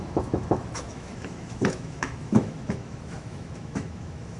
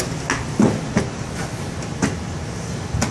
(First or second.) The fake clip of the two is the first